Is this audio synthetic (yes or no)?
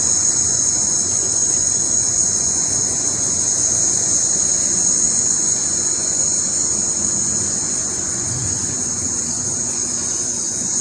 yes